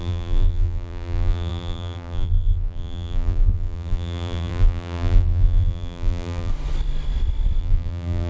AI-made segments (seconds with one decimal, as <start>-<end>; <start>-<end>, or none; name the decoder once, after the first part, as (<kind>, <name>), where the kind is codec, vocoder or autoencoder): 0.0-6.5 (vocoder, BigVGAN v2); 7.6-8.3